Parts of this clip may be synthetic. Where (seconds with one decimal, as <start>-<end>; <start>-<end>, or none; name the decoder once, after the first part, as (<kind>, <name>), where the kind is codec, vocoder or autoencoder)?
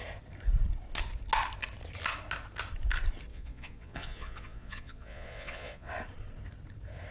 3.3-5.9 (vocoder, Vocos)